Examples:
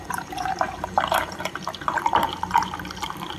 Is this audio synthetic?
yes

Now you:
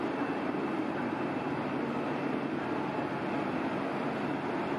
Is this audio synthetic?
no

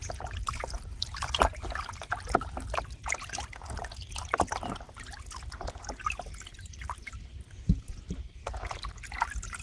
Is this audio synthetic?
no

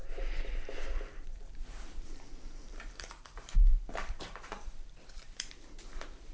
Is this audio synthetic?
yes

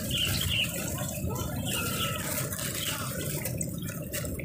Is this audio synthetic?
no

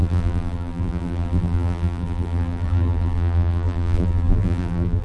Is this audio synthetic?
yes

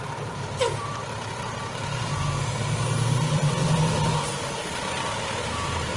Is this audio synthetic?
yes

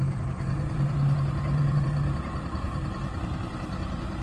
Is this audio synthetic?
yes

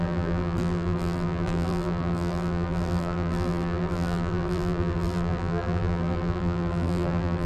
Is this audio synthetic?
yes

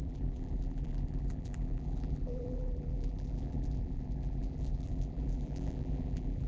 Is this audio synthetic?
yes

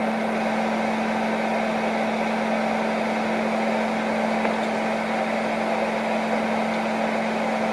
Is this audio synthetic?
no